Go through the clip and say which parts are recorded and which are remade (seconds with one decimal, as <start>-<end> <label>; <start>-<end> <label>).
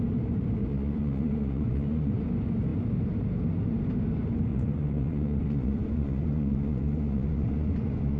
0.0-0.6 recorded; 0.6-2.2 remade; 2.2-4.5 recorded; 4.5-8.2 remade